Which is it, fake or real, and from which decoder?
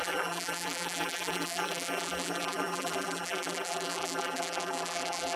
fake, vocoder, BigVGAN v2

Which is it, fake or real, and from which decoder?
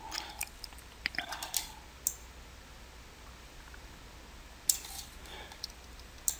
real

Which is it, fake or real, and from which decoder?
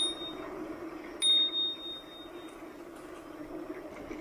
real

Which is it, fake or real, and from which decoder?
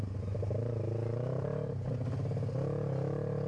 real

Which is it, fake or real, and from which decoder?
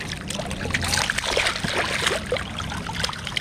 real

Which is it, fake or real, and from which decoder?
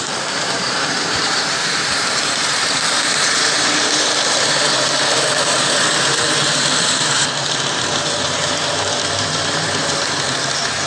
fake, vocoder, BigVGAN v2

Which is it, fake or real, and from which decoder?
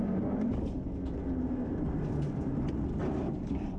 fake, vocoder, BigVGAN v2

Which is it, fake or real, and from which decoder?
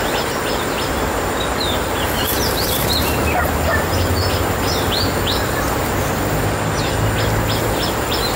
real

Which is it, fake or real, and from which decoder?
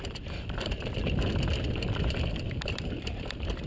fake, vocoder, BigVGAN v2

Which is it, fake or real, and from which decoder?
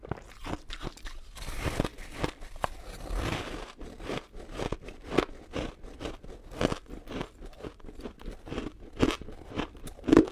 real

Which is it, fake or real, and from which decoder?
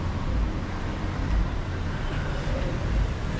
real